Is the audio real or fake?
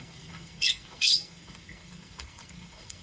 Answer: fake